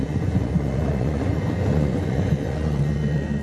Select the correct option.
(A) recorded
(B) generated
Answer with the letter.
B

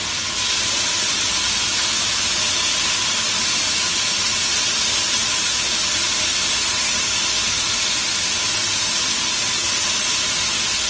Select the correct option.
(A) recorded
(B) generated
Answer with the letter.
A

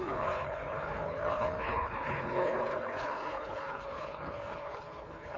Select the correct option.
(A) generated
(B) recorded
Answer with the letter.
A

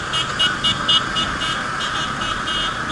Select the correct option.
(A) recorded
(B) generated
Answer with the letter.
A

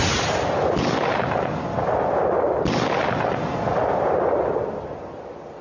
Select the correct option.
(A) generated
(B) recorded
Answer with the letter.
B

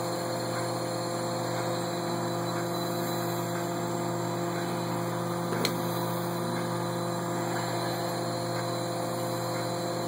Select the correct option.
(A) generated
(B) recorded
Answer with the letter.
B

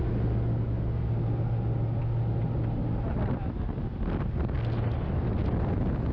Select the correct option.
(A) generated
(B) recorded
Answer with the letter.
B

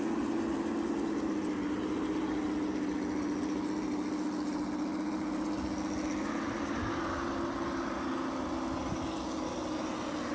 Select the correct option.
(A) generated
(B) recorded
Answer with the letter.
B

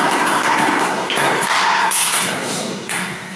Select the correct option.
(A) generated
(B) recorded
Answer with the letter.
A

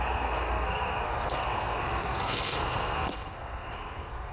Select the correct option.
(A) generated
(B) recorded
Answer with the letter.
A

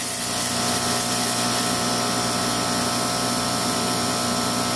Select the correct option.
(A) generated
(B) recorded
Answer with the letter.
B